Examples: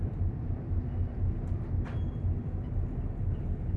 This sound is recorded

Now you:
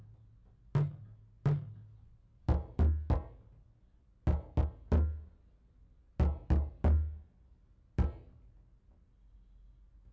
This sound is recorded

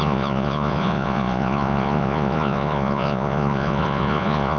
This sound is remade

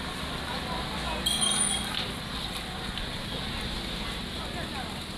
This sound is recorded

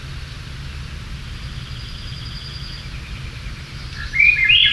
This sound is recorded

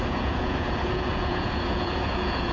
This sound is remade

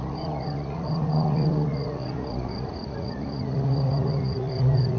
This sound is remade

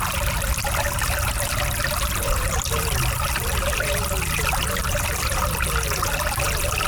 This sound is recorded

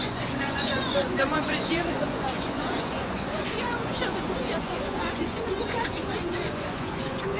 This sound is remade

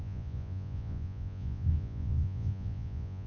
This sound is remade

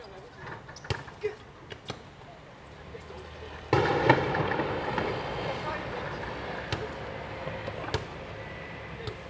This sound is recorded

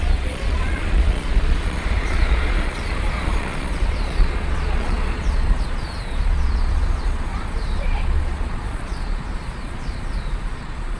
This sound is remade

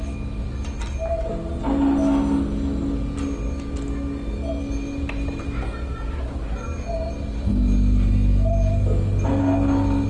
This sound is recorded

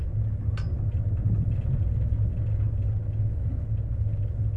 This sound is recorded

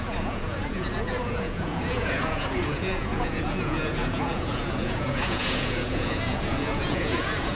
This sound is remade